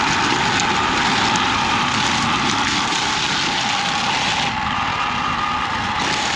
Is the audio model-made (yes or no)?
no